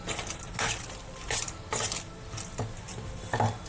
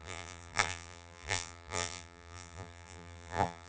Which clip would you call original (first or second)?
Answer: first